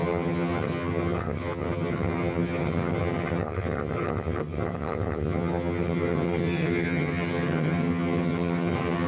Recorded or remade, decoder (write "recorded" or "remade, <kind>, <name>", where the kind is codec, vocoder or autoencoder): remade, vocoder, HiFi-GAN